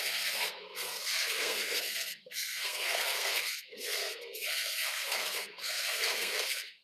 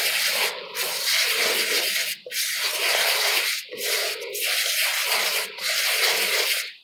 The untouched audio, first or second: second